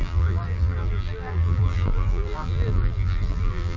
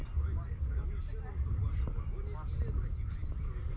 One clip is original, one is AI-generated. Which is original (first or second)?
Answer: second